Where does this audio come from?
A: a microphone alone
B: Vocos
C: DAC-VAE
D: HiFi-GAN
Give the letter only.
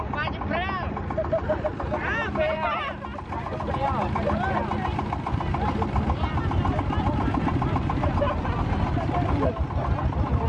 A